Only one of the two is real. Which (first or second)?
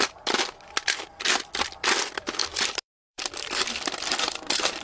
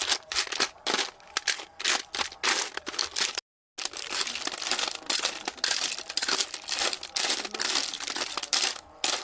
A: second